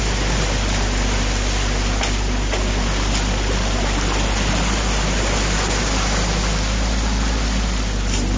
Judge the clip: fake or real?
real